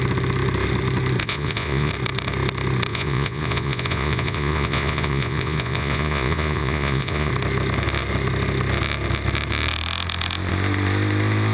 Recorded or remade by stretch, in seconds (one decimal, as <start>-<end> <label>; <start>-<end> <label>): 0.0-1.2 recorded; 1.2-1.9 remade; 1.9-2.9 recorded; 2.9-7.3 remade; 7.3-11.5 recorded